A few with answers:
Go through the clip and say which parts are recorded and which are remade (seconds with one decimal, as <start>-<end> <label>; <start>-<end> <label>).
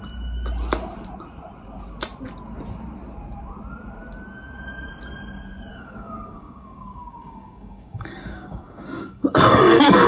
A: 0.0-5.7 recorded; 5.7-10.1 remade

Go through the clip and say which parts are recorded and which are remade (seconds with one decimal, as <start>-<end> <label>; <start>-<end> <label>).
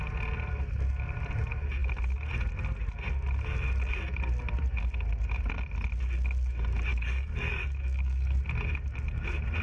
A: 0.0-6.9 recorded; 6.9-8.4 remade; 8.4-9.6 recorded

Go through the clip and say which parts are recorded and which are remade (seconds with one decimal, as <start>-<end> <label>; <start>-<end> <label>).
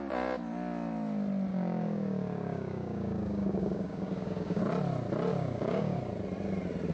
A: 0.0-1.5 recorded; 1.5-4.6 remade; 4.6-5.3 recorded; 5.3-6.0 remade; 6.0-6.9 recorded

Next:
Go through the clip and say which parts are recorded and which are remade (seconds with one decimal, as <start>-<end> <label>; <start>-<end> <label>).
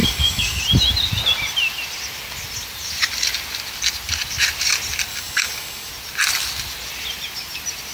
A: 0.0-0.6 remade; 0.6-5.1 recorded; 5.1-5.9 remade; 5.9-7.9 recorded